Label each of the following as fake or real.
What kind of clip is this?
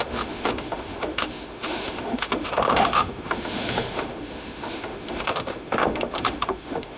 fake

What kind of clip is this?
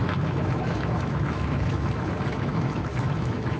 fake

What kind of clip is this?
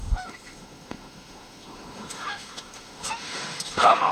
fake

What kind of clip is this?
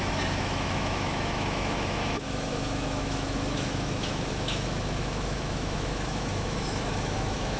fake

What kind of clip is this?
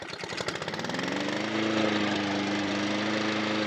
real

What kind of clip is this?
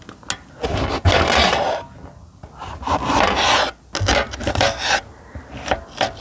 real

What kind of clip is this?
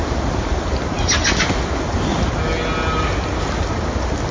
real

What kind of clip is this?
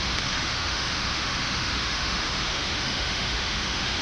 fake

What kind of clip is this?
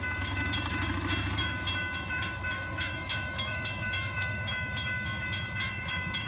fake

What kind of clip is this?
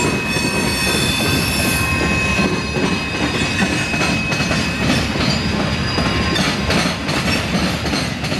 real